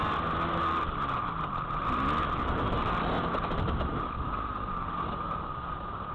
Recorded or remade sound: recorded